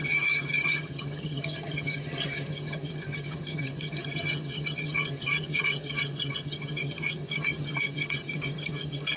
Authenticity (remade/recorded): remade